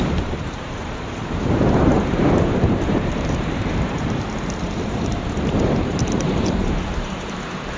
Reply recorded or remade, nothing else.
remade